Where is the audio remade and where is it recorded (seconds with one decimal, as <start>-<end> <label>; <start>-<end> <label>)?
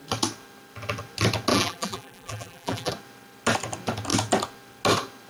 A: 0.0-1.5 recorded; 1.5-2.9 remade; 2.9-5.3 recorded